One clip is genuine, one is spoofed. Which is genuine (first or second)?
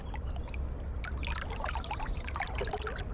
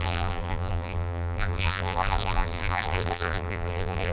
first